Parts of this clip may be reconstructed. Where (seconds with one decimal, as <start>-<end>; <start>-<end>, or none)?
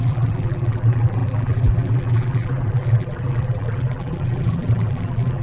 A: 0.0-5.4